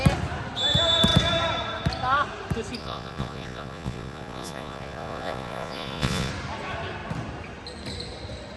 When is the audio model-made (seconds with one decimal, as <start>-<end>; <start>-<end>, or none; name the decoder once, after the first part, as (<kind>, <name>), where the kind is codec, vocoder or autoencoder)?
2.8-6.3 (vocoder, Vocos)